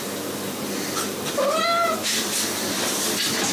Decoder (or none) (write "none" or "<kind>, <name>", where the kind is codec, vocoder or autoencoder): none